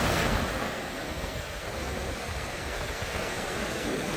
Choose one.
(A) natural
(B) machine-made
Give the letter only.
B